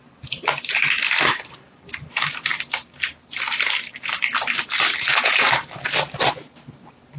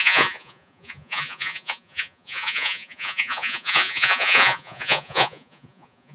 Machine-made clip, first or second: second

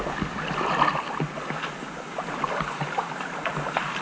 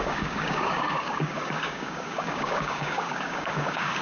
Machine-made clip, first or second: second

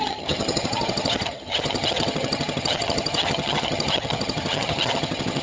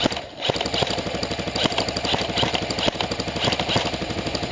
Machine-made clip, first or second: first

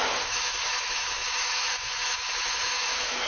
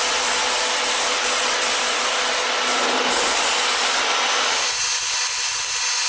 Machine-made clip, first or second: first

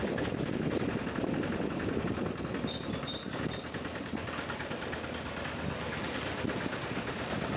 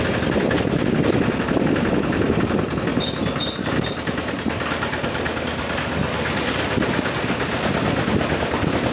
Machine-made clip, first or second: first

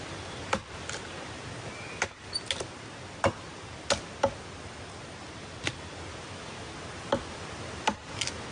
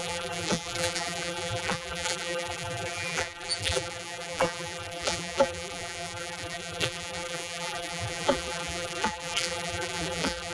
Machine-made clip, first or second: second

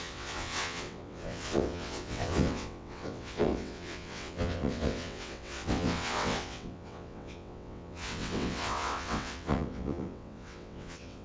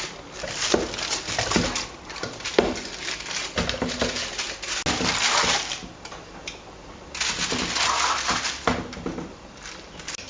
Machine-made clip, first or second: first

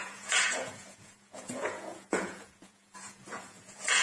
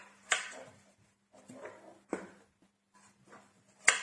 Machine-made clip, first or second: first